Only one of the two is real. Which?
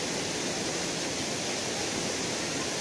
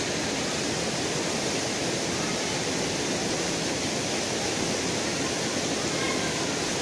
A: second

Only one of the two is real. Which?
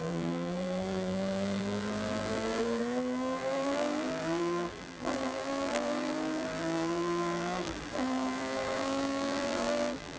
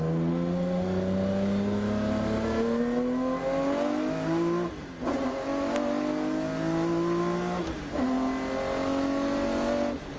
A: second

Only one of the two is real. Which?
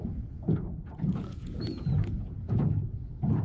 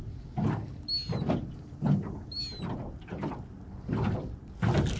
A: second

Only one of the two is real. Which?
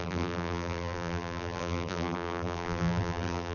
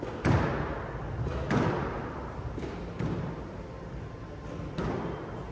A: second